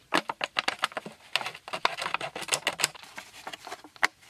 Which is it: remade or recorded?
recorded